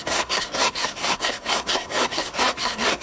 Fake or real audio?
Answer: fake